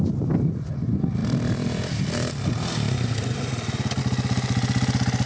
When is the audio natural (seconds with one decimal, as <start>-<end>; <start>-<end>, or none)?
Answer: 0.0-5.3